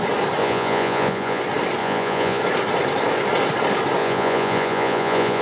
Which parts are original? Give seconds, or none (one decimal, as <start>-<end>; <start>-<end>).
0.0-0.4; 1.4-1.8; 2.4-4.0